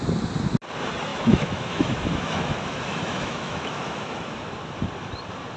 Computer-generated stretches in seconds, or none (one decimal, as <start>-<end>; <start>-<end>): 1.1-4.5